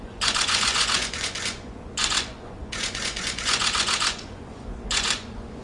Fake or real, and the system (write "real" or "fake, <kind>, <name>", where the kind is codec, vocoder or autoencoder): fake, vocoder, Vocos